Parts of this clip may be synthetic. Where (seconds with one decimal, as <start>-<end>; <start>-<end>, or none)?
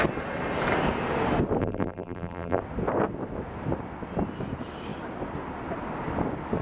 1.6-2.6